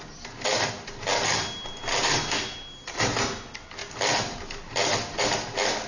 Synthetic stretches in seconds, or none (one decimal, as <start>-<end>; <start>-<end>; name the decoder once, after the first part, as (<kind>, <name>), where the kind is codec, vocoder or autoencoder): none